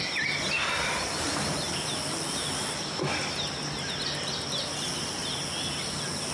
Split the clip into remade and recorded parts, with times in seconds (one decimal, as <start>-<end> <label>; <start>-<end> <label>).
0.0-6.3 recorded